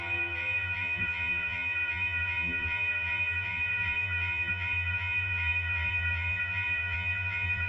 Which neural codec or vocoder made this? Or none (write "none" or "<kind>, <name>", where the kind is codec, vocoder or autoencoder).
vocoder, BigVGAN v2